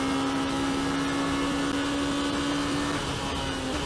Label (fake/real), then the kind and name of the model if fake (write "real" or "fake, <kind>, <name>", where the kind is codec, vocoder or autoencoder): real